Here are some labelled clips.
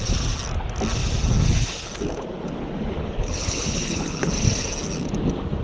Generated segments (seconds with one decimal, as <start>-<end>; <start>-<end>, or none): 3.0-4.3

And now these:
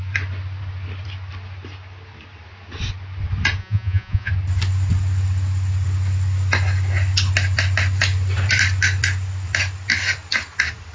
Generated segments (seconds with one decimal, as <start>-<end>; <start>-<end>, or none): 3.6-4.3

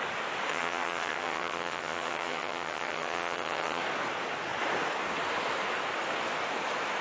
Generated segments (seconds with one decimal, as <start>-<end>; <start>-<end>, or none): 0.5-3.8

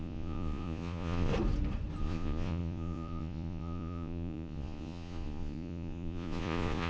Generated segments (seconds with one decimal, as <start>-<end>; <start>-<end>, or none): 0.0-1.3; 2.0-6.9

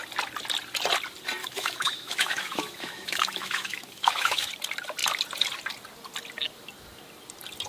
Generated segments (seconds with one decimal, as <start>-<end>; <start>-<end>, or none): 1.4-4.5

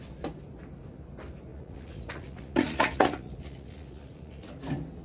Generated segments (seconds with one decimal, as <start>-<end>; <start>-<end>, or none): 1.5-4.5

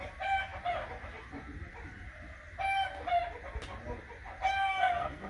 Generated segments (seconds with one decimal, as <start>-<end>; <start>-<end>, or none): 4.7-5.3

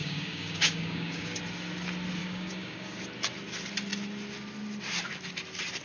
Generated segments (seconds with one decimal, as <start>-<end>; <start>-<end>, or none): 0.0-1.4; 2.2-3.0